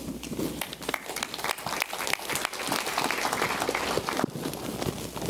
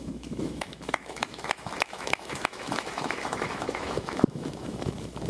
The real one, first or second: first